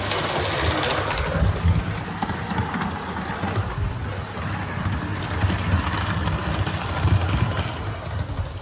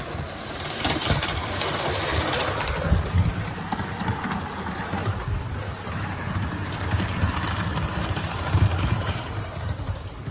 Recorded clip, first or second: first